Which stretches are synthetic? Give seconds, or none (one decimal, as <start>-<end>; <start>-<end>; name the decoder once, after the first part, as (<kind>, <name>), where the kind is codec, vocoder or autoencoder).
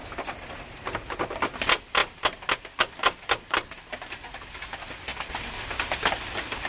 none